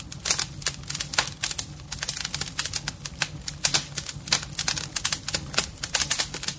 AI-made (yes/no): no